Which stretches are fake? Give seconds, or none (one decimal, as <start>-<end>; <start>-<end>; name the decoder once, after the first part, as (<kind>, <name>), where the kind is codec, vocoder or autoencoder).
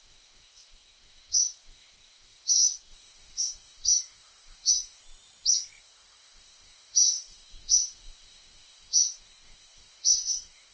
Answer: 0.0-5.0 (autoencoder, DAC-VAE); 5.8-10.7